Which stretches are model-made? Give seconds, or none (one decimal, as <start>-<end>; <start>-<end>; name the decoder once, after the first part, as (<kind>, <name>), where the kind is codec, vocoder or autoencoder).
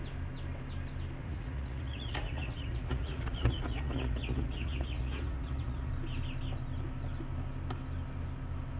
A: 1.2-5.9 (vocoder, Vocos)